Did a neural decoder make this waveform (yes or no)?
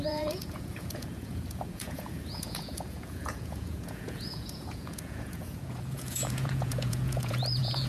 yes